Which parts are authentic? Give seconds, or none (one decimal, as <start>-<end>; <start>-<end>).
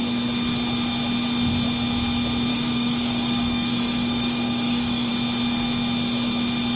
0.0-2.5; 5.1-6.8